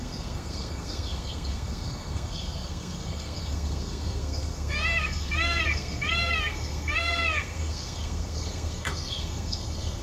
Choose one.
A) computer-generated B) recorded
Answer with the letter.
A